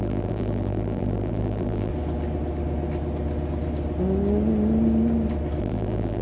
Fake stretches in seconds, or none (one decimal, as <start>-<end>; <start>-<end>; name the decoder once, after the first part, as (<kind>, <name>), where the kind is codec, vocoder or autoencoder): 0.0-1.9 (vocoder, BigVGAN v2); 5.6-6.2